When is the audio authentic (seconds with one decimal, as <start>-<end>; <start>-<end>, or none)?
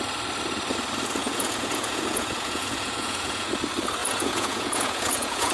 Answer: 0.0-1.2; 3.5-4.0